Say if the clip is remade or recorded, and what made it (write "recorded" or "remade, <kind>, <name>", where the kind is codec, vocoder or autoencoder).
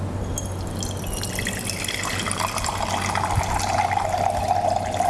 recorded